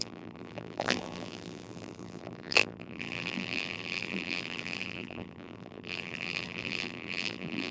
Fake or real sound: fake